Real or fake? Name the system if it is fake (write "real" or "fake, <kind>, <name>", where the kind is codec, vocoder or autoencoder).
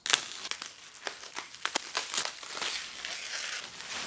real